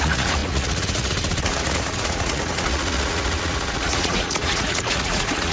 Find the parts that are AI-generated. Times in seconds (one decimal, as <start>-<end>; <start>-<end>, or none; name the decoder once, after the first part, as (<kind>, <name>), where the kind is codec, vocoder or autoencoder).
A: 0.0-5.5 (vocoder, Vocos)